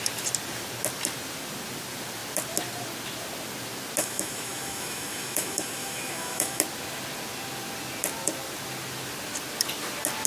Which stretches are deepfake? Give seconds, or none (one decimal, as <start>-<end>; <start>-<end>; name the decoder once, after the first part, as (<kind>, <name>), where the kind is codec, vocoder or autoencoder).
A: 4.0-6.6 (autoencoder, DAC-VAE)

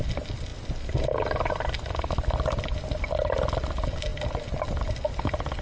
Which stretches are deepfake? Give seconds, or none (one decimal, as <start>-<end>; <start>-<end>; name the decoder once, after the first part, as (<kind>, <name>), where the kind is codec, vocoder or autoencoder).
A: none

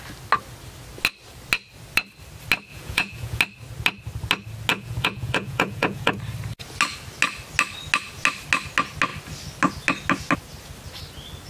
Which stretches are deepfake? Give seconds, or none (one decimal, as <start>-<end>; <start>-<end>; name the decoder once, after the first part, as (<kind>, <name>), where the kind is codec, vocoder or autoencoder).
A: 2.7-3.4 (vocoder, Vocos); 4.7-6.1

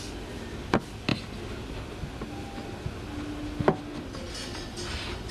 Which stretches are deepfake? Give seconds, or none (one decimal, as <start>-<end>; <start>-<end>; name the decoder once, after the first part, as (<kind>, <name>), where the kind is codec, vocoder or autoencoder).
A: none

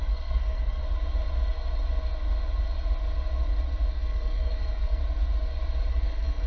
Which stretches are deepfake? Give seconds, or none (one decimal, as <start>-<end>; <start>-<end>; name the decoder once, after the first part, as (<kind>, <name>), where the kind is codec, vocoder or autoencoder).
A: 0.0-0.8 (codec, SNAC); 3.9-5.0; 5.9-6.5

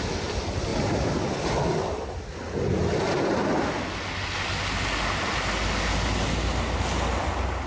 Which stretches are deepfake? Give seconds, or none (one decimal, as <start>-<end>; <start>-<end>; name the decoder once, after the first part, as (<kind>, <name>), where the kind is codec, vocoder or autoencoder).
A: none

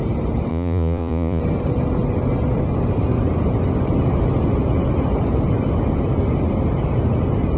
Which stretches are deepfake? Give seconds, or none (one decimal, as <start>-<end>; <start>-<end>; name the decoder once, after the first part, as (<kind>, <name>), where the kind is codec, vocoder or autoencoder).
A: 0.5-1.4 (vocoder, Vocos)

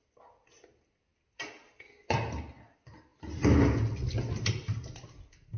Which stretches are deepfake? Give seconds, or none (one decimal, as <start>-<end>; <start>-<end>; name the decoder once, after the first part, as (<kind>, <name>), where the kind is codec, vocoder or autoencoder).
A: none